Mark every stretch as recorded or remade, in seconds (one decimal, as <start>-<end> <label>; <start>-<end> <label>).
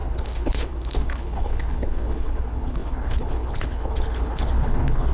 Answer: 0.0-5.1 remade